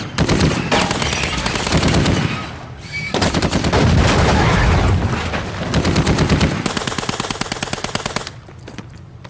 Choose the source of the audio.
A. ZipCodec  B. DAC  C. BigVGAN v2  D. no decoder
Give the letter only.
C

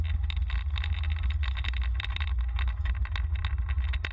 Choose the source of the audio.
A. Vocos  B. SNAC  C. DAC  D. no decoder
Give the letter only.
D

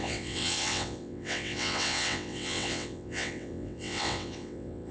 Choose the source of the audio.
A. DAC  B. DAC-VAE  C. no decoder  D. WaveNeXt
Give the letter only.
D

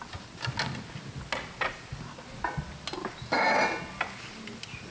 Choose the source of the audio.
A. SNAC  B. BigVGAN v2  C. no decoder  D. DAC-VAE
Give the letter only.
C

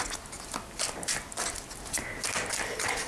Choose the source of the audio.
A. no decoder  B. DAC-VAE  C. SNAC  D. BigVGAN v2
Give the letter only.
A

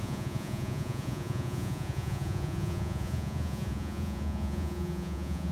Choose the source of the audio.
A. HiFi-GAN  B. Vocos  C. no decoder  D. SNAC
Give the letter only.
B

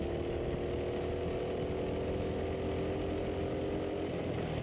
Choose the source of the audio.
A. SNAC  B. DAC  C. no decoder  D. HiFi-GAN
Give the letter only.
C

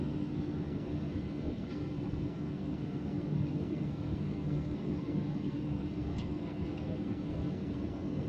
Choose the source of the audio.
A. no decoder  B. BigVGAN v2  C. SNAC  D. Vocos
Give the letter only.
C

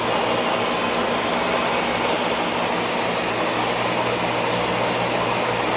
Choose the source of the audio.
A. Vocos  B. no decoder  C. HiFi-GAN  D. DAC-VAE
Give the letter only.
B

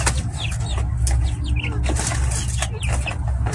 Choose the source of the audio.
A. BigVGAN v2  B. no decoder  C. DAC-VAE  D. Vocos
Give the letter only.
B